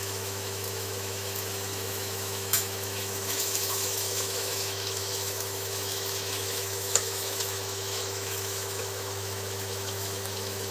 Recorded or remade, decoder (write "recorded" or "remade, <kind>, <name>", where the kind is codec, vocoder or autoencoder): remade, autoencoder, DAC-VAE